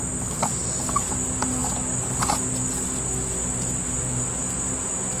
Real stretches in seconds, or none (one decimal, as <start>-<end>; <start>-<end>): 0.0-5.2